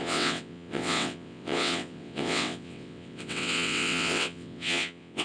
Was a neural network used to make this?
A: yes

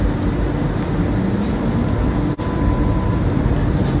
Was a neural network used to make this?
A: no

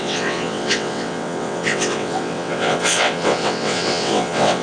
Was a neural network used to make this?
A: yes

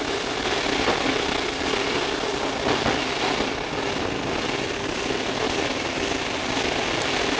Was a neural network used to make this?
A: no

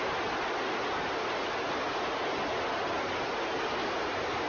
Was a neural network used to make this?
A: no